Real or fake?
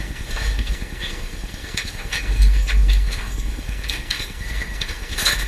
fake